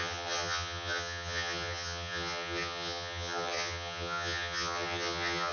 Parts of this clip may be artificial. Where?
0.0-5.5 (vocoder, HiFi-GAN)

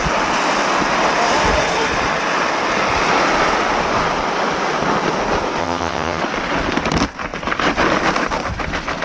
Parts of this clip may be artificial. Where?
5.6-6.2 (vocoder, HiFi-GAN)

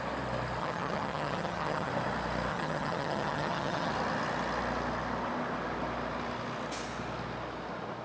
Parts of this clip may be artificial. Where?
0.6-1.9 (vocoder, HiFi-GAN); 2.5-3.9

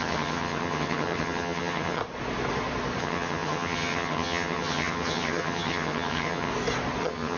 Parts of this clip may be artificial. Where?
0.0-2.0 (vocoder, HiFi-GAN); 3.0-6.5; 7.0-7.4

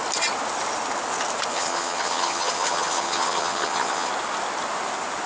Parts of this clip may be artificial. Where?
1.5-4.1 (vocoder, HiFi-GAN)

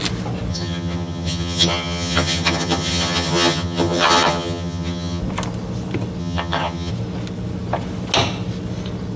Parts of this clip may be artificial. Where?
0.5-5.2 (vocoder, HiFi-GAN); 6.2-6.9

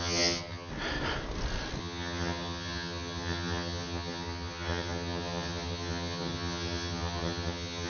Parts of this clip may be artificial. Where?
0.0-0.7 (vocoder, HiFi-GAN); 1.8-7.9

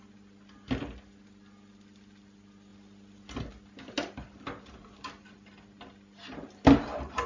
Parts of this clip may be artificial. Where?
none